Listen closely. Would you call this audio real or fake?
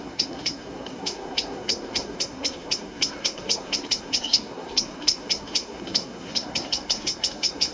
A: fake